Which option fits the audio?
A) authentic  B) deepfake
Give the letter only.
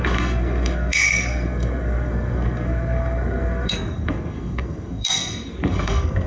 B